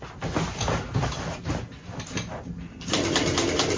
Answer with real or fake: real